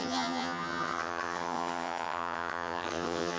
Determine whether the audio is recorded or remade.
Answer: remade